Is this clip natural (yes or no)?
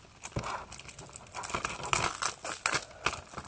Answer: yes